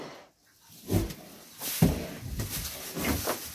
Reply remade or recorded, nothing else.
recorded